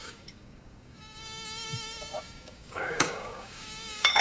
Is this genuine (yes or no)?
no